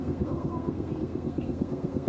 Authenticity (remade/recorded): remade